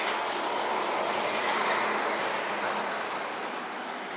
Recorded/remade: recorded